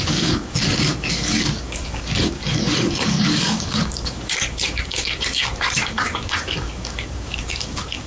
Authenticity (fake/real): fake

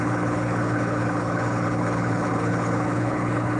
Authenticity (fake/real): fake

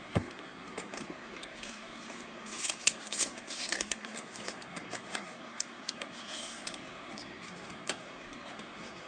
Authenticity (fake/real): fake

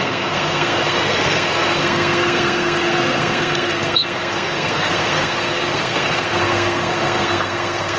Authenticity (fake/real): fake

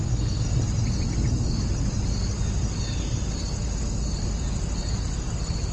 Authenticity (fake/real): real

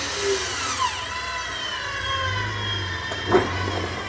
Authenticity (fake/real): real